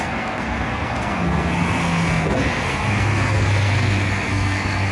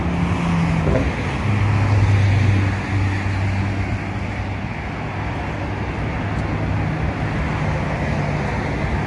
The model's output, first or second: first